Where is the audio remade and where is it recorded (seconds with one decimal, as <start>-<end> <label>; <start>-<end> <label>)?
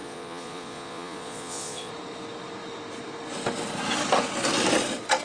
0.0-1.9 remade; 1.9-5.2 recorded